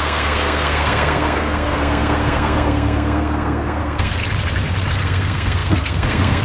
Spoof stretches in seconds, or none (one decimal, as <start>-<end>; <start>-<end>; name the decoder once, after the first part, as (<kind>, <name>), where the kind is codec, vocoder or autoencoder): 0.0-4.2 (codec, SNAC); 4.9-6.4

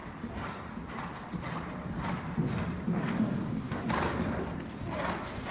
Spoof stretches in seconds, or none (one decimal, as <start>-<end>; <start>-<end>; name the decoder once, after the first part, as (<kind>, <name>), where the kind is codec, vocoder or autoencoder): 3.0-3.8 (codec, DAC)

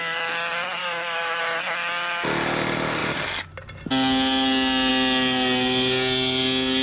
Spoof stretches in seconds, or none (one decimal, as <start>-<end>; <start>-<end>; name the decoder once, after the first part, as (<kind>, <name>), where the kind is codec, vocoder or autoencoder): 0.8-1.4 (autoencoder, DAC-VAE)